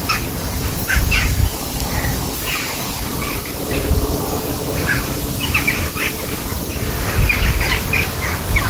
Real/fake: fake